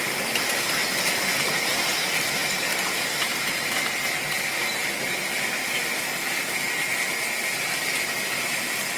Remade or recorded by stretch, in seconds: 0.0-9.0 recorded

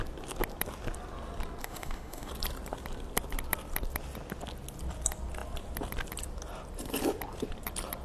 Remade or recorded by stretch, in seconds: 0.0-1.6 recorded; 1.6-2.3 remade; 2.3-8.0 recorded

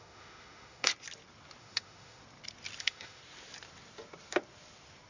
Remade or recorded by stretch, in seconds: 0.0-0.9 remade; 0.9-1.6 recorded; 1.6-2.2 remade; 2.2-2.8 recorded; 2.8-3.2 remade; 3.2-5.1 recorded

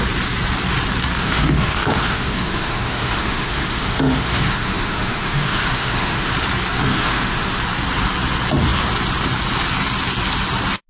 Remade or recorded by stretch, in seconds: 0.0-1.2 recorded; 1.2-6.3 remade; 6.3-6.9 recorded; 6.9-7.6 remade; 7.6-10.9 recorded

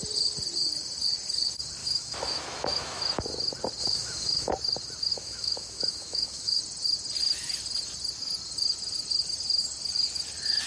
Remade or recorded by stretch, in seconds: 0.0-1.8 recorded; 1.8-3.0 remade; 3.0-3.8 recorded; 3.8-4.5 remade; 4.5-5.1 recorded; 5.1-6.6 remade; 6.6-10.7 recorded

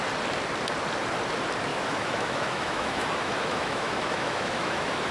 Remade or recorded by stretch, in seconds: 0.0-1.7 recorded; 1.7-5.1 remade